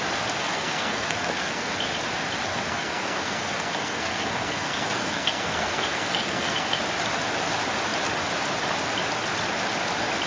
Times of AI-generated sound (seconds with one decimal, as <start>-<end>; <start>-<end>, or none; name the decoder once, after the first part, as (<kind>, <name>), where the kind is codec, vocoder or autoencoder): 0.4-1.8 (codec, SNAC); 2.5-6.8

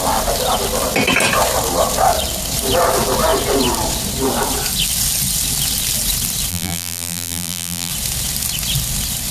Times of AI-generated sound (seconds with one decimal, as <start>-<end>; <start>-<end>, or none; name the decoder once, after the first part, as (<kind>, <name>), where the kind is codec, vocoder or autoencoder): 6.5-7.9 (vocoder, BigVGAN v2)

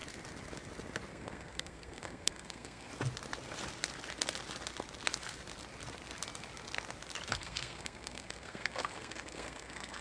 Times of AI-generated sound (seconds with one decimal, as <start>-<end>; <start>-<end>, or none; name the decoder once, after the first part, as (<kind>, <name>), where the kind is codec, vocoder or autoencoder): 1.1-2.9 (codec, SNAC); 7.3-10.0

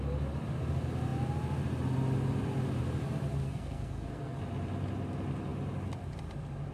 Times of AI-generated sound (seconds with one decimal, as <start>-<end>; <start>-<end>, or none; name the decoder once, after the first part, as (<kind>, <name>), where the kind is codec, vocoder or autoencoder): 3.4-4.4 (codec, SNAC)